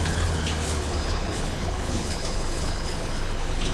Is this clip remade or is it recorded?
remade